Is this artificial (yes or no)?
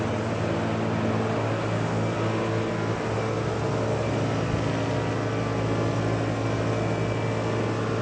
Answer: no